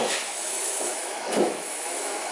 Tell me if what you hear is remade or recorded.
remade